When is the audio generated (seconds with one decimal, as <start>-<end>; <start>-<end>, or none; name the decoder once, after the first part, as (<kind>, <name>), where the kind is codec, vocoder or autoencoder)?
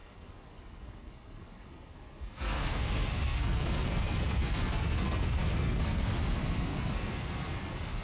0.0-8.0 (codec, SNAC)